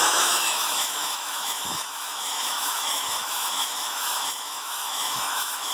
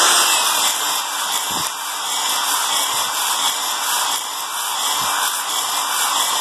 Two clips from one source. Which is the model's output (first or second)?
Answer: first